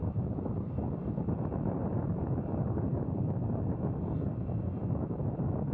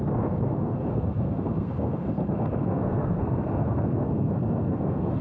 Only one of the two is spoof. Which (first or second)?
second